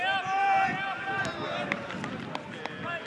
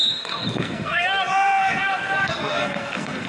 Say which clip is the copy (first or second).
second